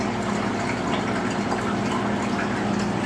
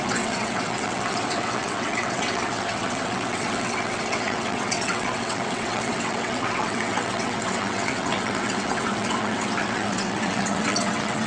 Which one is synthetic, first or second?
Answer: second